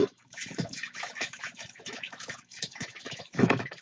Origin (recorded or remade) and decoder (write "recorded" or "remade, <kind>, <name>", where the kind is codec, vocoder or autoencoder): remade, autoencoder, DAC-VAE